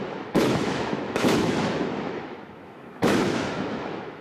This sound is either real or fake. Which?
fake